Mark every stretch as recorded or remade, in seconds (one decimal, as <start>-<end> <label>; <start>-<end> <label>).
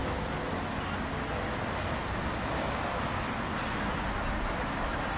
0.0-5.2 recorded